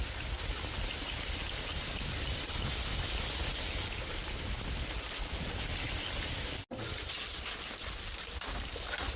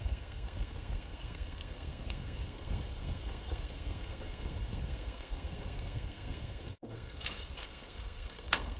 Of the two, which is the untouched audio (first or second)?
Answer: first